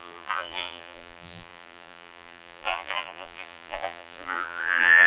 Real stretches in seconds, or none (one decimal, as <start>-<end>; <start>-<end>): none